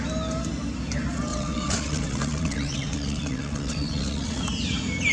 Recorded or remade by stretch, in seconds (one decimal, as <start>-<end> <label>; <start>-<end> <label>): 0.0-1.3 recorded; 1.3-4.4 remade; 4.4-5.1 recorded